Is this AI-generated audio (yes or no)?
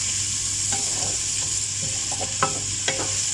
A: no